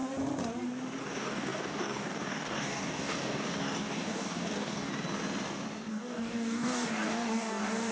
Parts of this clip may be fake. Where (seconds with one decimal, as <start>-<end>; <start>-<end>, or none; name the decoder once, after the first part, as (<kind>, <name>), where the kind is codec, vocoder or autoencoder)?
1.0-4.9 (codec, DAC); 5.9-7.9